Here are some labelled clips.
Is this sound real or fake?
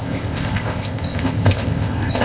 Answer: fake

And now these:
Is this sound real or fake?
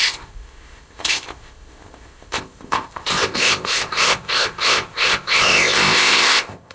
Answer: fake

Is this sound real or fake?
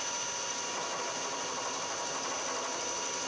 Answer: real